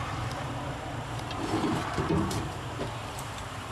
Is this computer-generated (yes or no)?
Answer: yes